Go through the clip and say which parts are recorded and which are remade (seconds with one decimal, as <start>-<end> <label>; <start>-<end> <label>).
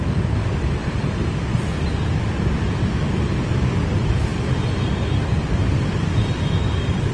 0.0-0.8 recorded; 0.8-1.3 remade; 1.3-7.1 recorded